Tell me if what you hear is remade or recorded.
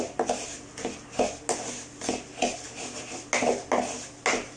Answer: recorded